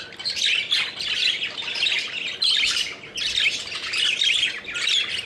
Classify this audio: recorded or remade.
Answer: recorded